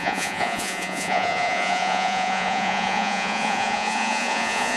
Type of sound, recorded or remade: remade